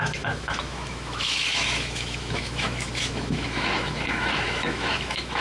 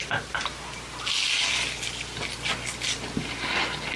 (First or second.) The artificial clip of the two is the first